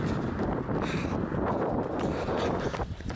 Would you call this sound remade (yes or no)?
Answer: no